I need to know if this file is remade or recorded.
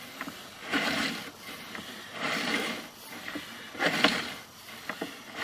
recorded